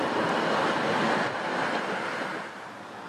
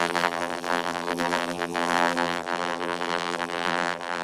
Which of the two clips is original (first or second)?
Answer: first